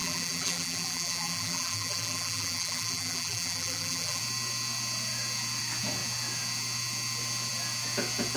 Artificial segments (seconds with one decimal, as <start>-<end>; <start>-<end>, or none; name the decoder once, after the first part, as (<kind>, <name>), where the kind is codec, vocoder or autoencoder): 0.0-4.2 (vocoder, BigVGAN v2)